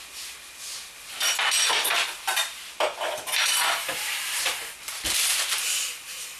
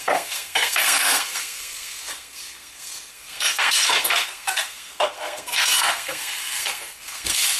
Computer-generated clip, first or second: second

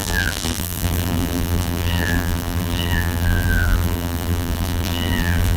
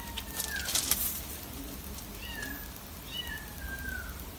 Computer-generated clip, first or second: first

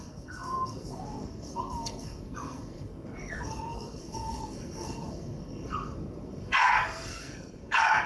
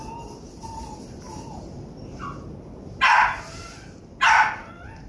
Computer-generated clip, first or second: first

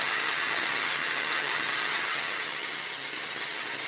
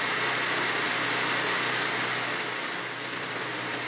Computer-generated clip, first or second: first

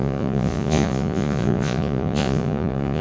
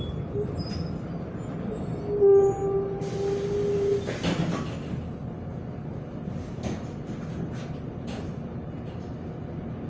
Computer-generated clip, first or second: first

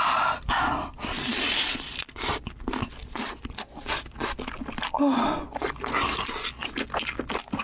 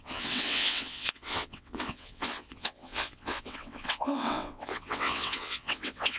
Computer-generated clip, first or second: second